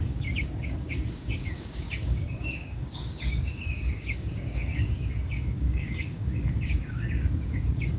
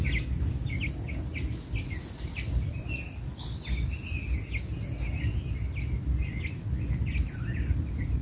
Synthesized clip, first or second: first